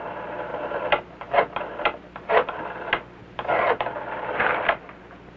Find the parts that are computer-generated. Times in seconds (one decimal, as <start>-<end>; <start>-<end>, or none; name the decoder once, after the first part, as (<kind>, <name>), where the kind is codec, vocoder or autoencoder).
0.0-5.4 (vocoder, BigVGAN v2)